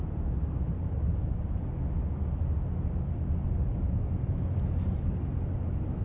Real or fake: real